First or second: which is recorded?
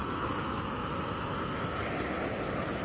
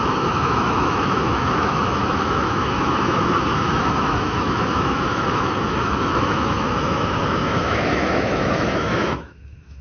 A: first